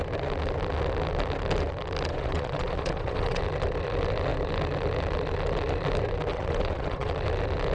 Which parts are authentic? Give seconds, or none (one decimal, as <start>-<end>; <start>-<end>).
0.0-2.1; 3.4-6.3; 7.1-7.7